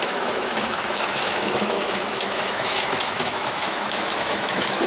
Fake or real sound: fake